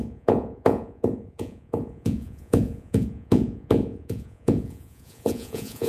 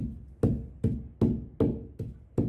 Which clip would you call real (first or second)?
second